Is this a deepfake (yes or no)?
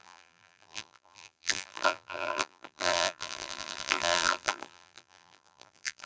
yes